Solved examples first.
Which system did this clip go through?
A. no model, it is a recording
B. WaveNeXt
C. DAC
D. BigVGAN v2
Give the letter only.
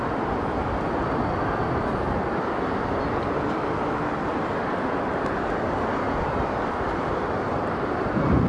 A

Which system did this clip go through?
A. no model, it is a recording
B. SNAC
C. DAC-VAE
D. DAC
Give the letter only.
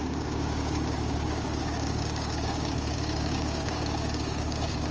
D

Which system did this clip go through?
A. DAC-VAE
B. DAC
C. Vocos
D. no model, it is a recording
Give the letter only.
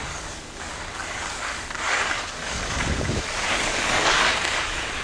B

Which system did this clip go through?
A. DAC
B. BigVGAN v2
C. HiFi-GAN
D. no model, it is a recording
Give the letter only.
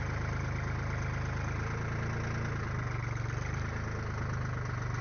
D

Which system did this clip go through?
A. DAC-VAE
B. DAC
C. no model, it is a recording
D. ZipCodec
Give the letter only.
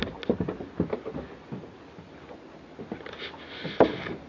C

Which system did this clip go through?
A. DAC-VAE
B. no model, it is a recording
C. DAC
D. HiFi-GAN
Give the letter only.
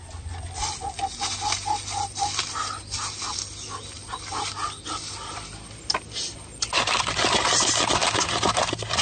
B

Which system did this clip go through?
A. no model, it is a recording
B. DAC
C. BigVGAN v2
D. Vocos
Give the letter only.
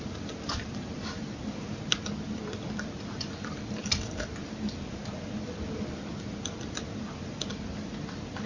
A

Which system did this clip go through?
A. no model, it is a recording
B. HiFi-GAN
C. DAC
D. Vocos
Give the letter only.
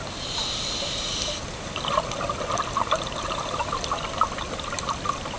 A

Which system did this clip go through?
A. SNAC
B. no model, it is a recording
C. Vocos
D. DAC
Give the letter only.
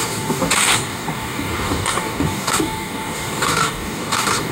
D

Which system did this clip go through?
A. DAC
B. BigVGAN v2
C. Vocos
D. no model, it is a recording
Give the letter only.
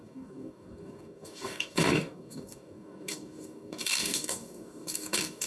A